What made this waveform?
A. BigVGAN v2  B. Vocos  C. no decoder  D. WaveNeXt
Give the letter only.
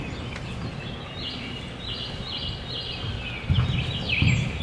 C